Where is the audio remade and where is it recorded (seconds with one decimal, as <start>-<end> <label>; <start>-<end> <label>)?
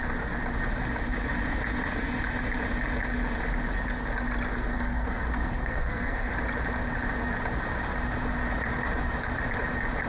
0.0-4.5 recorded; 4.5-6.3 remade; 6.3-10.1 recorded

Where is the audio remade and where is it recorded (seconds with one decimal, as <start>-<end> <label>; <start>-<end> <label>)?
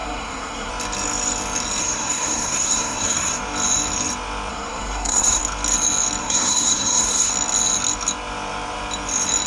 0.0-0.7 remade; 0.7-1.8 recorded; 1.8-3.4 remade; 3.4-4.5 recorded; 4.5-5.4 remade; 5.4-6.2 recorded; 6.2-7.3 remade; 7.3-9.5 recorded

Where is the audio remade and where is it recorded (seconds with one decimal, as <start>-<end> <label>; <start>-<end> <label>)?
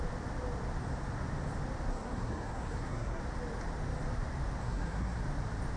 0.0-1.9 recorded; 1.9-3.2 remade; 3.2-4.6 recorded; 4.6-5.2 remade; 5.2-5.8 recorded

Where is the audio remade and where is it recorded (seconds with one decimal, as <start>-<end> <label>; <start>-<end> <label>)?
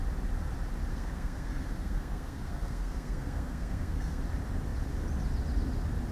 0.0-0.9 recorded; 0.9-4.2 remade; 4.2-6.1 recorded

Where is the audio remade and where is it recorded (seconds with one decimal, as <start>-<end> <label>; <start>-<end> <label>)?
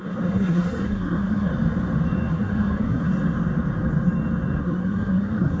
0.0-1.5 remade; 1.5-2.3 recorded; 2.3-3.1 remade; 3.1-4.6 recorded; 4.6-5.6 remade